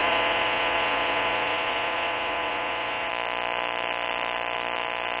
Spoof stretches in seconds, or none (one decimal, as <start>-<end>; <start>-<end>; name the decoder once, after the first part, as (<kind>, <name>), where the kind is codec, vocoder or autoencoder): 0.0-3.1 (vocoder, Vocos)